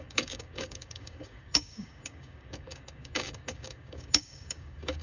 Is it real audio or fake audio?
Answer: fake